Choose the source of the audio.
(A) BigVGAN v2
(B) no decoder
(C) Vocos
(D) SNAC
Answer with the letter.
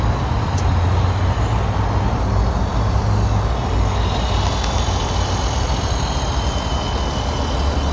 B